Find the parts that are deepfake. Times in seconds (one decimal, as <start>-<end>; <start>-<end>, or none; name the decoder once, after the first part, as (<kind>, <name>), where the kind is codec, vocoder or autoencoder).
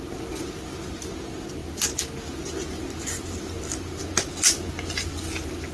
none